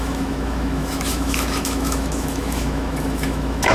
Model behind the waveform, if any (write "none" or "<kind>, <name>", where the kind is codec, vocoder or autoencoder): autoencoder, DAC-VAE